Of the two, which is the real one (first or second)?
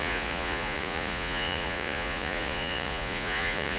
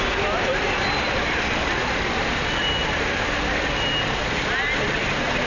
second